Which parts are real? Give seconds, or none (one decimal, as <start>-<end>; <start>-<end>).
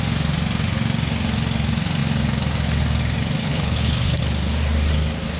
0.0-3.4; 4.2-5.4